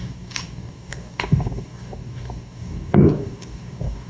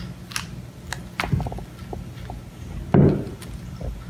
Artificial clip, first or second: first